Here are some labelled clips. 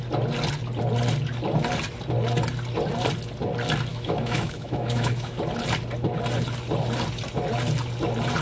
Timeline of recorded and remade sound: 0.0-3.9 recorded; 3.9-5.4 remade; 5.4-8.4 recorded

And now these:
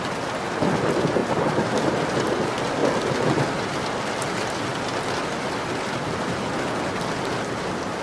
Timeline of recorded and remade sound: 0.0-8.0 recorded